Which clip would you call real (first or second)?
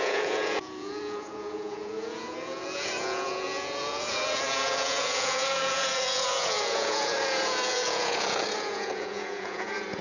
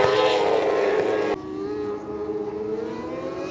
second